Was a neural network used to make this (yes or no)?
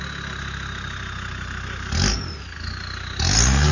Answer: no